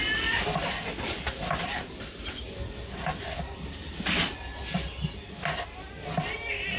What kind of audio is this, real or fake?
real